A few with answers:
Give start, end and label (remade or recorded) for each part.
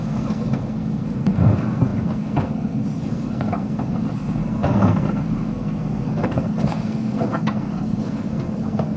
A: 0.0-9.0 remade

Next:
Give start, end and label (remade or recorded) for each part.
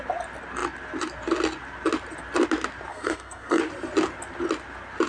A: 0.0-2.9 recorded; 2.9-3.6 remade; 3.6-5.1 recorded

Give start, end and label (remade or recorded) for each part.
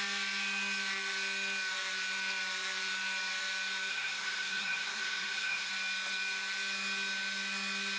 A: 0.0-3.9 recorded; 3.9-5.7 remade; 5.7-8.0 recorded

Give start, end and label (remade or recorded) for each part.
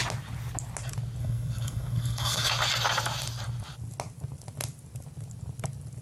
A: 0.0-1.2 recorded; 1.2-2.5 remade; 2.5-6.0 recorded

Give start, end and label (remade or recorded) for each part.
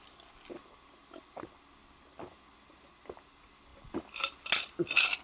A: 0.0-5.2 recorded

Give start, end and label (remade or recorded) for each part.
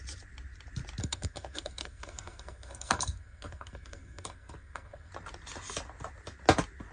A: 0.0-1.0 recorded; 1.0-5.1 remade; 5.1-6.9 recorded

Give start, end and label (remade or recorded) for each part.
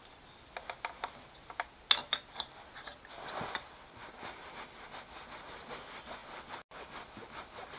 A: 0.0-7.8 recorded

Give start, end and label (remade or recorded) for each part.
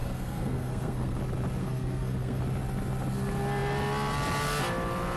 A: 0.0-1.2 remade; 1.2-1.6 recorded; 1.6-2.4 remade; 2.4-5.2 recorded